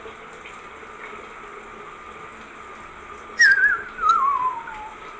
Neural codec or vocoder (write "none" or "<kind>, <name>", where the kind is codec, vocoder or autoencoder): none